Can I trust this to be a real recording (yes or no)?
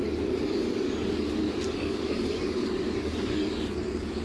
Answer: no